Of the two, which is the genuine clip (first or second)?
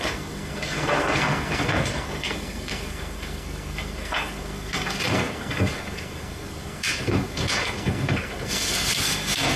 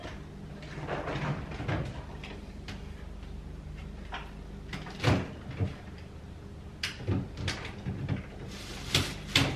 second